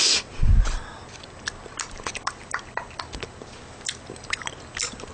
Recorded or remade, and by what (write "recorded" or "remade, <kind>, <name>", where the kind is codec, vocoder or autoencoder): recorded